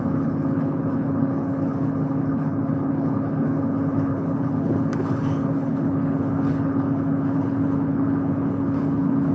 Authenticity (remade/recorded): remade